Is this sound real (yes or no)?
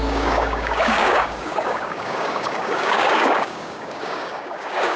no